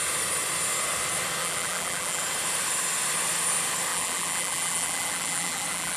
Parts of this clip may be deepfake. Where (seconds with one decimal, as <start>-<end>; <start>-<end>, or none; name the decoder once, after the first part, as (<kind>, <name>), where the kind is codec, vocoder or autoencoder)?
1.4-2.2 (vocoder, BigVGAN v2); 3.9-6.0